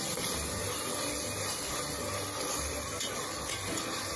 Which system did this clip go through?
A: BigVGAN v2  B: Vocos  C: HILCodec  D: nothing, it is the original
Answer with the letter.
D